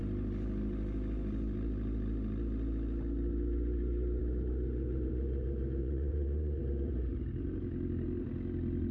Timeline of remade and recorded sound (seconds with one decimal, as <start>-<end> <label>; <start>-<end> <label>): 0.0-5.8 recorded; 5.8-6.6 remade; 6.6-8.9 recorded